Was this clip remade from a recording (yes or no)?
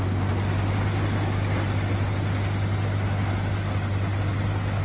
no